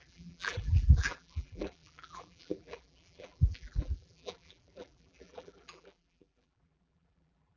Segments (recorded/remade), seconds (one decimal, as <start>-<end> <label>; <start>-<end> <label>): 0.0-7.6 remade